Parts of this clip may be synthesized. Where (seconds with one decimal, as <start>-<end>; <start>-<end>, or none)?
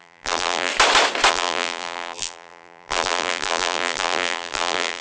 0.0-0.7; 1.3-5.0